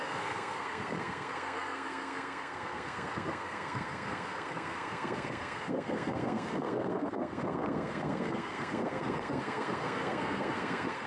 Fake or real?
fake